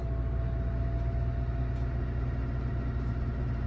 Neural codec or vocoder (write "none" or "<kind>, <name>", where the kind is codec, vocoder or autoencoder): none